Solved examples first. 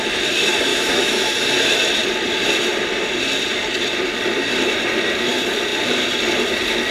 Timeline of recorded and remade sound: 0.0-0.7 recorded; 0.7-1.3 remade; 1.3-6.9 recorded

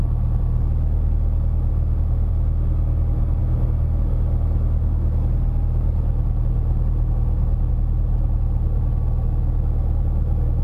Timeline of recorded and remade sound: 0.0-1.7 recorded; 1.7-2.3 remade; 2.3-10.6 recorded

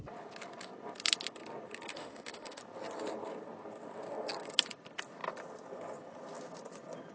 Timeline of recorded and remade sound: 0.0-1.9 recorded; 1.9-2.6 remade; 2.6-7.1 recorded

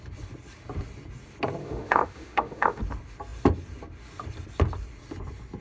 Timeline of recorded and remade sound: 0.0-1.6 recorded; 1.6-2.8 remade; 2.8-5.6 recorded